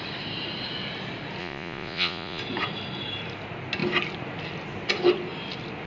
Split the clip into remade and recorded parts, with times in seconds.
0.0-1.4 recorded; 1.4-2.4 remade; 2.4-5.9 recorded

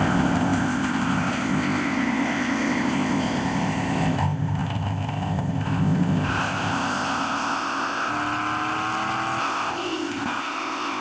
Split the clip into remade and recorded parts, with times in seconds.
0.0-8.1 remade; 8.1-9.4 recorded; 9.4-11.0 remade

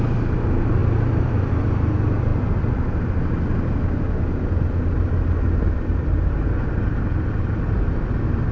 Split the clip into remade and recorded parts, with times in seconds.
0.0-0.8 recorded; 0.8-1.5 remade; 1.5-8.5 recorded